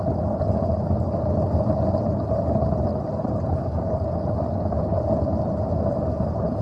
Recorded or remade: recorded